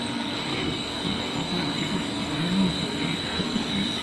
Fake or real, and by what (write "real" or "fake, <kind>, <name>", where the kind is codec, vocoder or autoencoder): fake, codec, SNAC